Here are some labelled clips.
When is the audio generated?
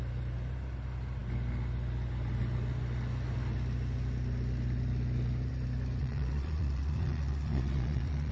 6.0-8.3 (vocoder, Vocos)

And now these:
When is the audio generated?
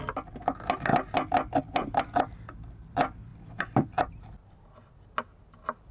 none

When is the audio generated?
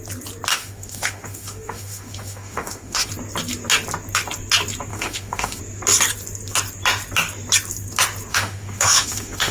0.5-3.1 (autoencoder, DAC-VAE); 4.9-5.6; 8.3-9.5